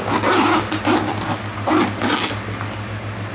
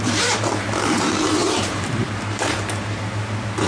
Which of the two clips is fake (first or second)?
second